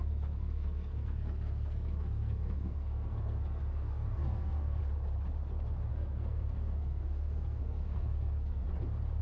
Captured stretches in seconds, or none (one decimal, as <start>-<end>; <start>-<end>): 4.8-5.9; 8.6-9.2